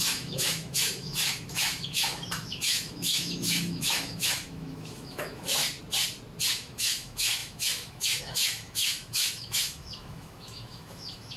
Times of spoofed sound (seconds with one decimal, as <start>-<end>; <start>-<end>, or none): 0.0-5.6; 6.5-11.4